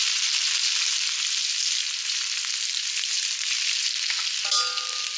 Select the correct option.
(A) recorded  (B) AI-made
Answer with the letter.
A